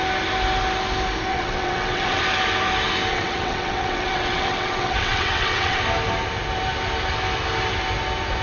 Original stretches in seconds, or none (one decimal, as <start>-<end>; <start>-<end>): 0.0-1.3; 2.2-3.1; 5.8-8.4